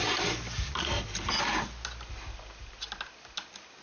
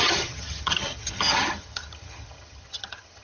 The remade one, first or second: second